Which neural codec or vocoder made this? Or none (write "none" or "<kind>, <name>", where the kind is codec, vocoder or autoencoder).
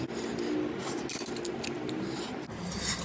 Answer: none